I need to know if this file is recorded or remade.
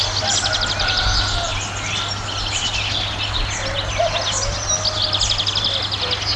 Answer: recorded